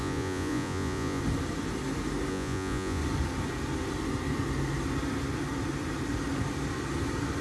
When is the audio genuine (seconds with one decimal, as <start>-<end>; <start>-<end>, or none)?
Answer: 1.2-2.3; 3.0-7.4